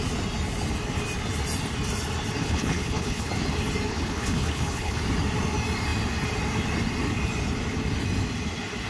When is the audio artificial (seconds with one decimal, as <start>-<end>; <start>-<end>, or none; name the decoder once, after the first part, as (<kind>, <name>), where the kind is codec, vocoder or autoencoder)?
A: 2.4-3.3 (codec, HILCodec); 3.9-5.0